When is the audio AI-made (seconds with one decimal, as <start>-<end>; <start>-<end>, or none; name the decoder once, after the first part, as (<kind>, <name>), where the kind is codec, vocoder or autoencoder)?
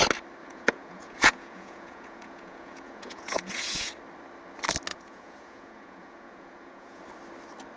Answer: 0.4-3.9 (vocoder, Vocos); 4.9-7.0